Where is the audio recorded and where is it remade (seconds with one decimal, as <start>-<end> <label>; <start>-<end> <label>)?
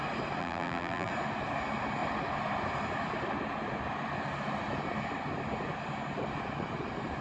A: 0.0-0.4 recorded; 0.4-1.1 remade; 1.1-7.2 recorded